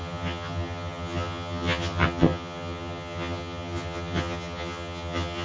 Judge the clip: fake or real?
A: fake